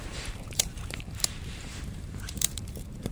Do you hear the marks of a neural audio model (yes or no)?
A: yes